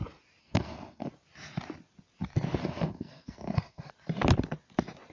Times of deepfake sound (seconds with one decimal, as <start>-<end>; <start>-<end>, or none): 0.4-1.1; 2.6-3.9